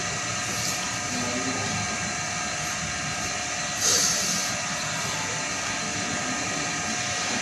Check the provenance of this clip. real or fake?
real